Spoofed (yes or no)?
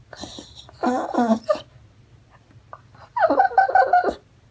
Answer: no